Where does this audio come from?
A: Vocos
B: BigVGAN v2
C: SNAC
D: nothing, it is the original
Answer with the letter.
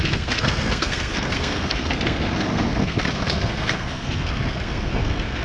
C